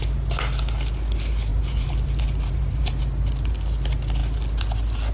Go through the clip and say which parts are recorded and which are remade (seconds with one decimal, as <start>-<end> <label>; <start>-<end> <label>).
0.0-1.5 recorded; 1.5-3.0 remade; 3.0-5.1 recorded